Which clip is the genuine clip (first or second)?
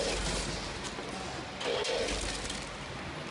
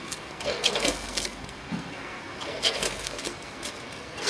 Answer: first